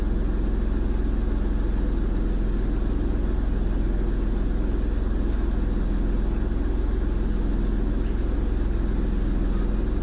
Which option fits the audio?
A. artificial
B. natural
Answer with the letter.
B